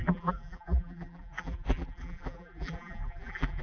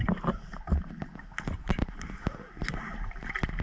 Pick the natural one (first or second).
second